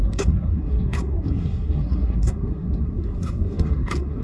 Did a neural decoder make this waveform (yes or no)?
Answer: yes